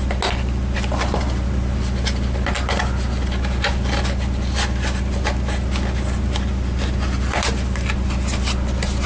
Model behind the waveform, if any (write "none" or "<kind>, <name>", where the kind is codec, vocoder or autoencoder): none